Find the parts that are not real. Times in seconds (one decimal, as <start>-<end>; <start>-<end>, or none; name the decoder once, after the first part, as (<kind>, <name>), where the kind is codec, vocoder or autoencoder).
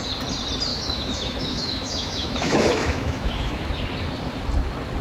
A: 0.7-3.7 (autoencoder, DAC-VAE)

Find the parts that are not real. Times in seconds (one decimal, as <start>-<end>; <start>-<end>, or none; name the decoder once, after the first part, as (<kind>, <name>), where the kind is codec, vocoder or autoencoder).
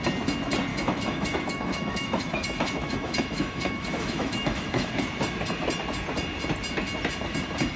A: 0.7-4.9 (autoencoder, DAC-VAE)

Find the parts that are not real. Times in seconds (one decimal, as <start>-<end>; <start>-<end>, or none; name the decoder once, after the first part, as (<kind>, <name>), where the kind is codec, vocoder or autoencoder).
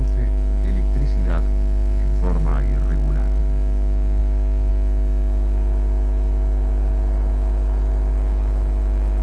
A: 0.0-2.5 (autoencoder, DAC-VAE); 3.4-9.2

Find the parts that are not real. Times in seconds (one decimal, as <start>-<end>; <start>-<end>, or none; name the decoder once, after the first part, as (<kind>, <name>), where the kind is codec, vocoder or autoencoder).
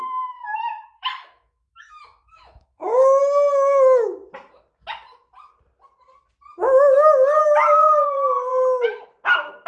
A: 0.0-4.2 (autoencoder, DAC-VAE); 7.4-8.5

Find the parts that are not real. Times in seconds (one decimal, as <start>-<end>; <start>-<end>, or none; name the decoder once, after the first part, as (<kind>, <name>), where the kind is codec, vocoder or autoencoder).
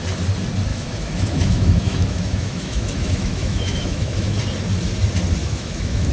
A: 0.7-4.4 (autoencoder, DAC-VAE); 5.4-6.1